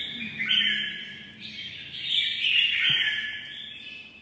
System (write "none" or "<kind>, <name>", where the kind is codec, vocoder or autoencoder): none